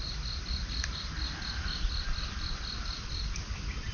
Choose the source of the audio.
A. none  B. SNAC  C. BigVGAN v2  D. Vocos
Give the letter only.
A